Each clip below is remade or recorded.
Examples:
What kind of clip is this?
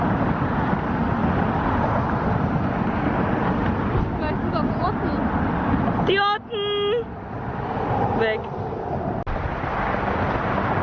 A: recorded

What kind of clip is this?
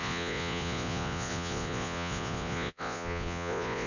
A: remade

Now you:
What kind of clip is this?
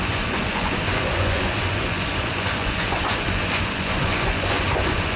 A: remade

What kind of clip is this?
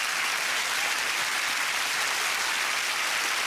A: recorded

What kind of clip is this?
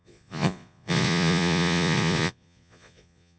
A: remade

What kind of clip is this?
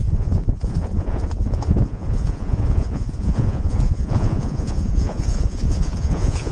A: remade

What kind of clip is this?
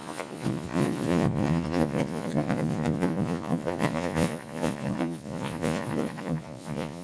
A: remade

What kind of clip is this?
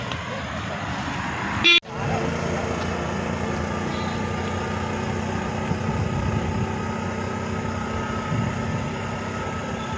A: recorded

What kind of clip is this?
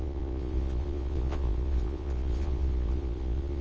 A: remade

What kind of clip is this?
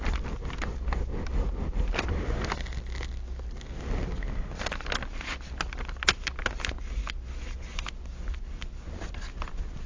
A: recorded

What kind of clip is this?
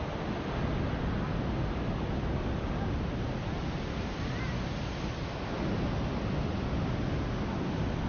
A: recorded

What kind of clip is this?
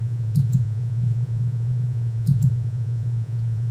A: remade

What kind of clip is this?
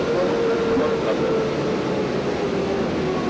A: recorded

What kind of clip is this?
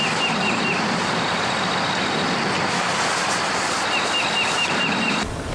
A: recorded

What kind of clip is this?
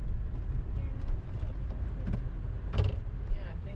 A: recorded